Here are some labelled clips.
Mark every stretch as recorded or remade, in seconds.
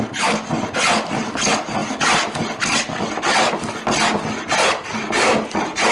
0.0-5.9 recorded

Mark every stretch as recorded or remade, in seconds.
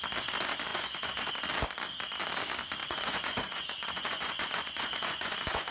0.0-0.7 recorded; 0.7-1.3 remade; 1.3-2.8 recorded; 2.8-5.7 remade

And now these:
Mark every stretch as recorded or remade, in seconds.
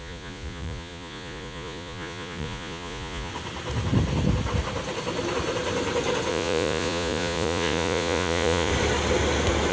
0.0-3.3 remade; 3.3-6.3 recorded; 6.3-8.7 remade; 8.7-9.7 recorded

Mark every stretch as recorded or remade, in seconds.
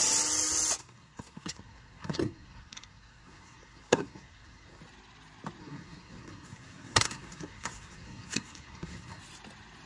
0.0-0.8 recorded; 0.8-4.8 remade; 4.8-5.6 recorded; 5.6-9.2 remade; 9.2-9.9 recorded